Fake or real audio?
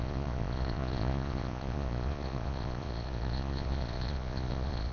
fake